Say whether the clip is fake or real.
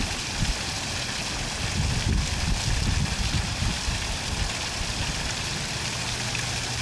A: real